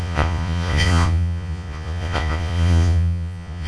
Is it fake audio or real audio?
fake